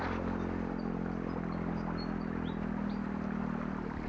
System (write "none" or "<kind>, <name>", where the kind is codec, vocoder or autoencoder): none